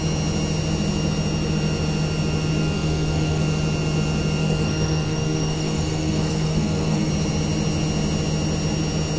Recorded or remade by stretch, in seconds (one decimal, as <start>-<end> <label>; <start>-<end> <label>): 0.0-2.6 recorded; 2.6-3.4 remade; 3.4-4.4 recorded; 4.4-7.1 remade; 7.1-9.2 recorded